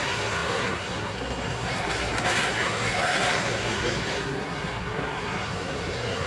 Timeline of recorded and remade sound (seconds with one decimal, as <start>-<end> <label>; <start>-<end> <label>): 0.0-6.3 remade